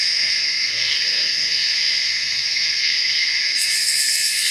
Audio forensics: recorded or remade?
remade